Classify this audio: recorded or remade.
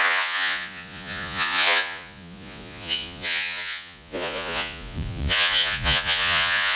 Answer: remade